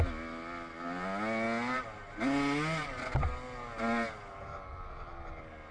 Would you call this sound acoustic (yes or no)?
yes